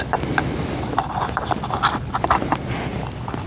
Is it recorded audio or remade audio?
recorded